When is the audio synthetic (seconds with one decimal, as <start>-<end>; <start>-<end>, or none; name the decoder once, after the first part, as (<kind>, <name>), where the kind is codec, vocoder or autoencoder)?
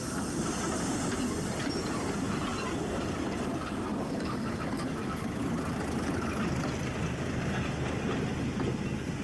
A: 2.5-5.4 (vocoder, BigVGAN v2)